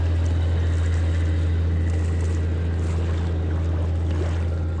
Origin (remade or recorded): recorded